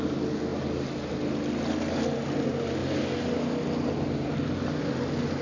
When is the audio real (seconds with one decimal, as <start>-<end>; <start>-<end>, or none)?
0.0-5.4